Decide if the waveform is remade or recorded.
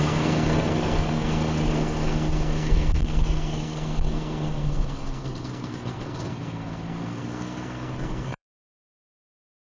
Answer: remade